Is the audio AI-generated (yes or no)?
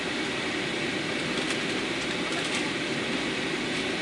no